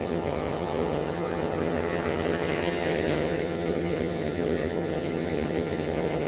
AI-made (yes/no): yes